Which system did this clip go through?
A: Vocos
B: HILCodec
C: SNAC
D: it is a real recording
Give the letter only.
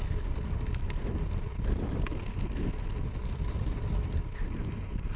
D